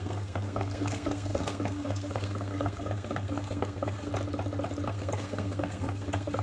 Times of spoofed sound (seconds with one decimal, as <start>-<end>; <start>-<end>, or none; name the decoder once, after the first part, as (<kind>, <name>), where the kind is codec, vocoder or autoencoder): 0.0-4.1 (codec, SNAC); 4.9-6.4